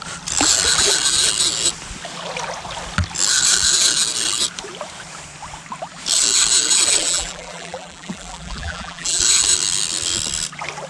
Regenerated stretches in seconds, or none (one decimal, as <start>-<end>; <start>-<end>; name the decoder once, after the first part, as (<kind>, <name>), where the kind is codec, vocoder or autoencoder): 7.0-9.2 (vocoder, BigVGAN v2)